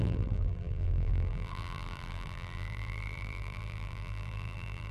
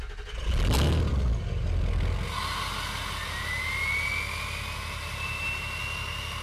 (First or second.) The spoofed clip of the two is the first